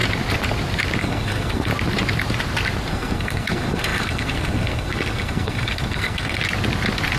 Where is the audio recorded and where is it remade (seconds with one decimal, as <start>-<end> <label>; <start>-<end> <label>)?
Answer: 0.0-1.0 recorded; 1.0-1.7 remade; 1.7-2.9 recorded; 2.9-6.4 remade; 6.4-7.2 recorded